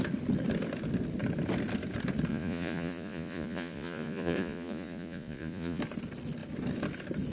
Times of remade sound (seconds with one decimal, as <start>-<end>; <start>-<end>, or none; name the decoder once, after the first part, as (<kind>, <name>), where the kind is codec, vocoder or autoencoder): 2.3-5.8 (vocoder, Vocos)

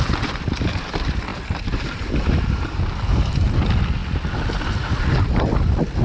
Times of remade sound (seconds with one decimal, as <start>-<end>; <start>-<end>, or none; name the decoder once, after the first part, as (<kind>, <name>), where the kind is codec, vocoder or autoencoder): 1.3-3.5 (vocoder, BigVGAN v2)

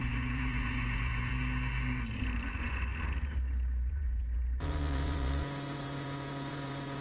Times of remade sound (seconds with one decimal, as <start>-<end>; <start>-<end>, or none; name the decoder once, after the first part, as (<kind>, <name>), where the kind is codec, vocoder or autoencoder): 0.0-1.3 (vocoder, Vocos); 2.5-2.9; 3.9-7.0